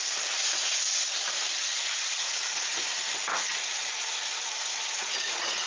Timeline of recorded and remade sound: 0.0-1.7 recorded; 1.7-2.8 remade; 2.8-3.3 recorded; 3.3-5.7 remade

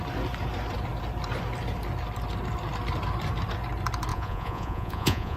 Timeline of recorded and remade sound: 0.0-4.1 recorded; 4.1-5.4 remade

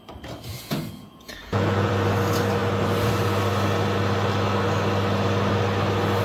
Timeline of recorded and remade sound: 0.0-0.5 recorded; 0.5-1.9 remade; 1.9-6.2 recorded

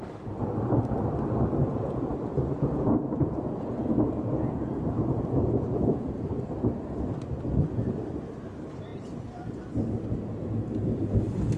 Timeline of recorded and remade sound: 0.0-1.7 recorded; 1.7-6.3 remade; 6.3-11.6 recorded